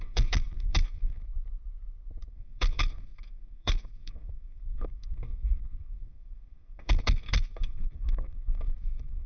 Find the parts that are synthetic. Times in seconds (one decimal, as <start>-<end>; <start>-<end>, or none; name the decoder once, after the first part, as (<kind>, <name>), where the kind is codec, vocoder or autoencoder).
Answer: 0.0-1.2 (codec, SNAC); 2.3-9.3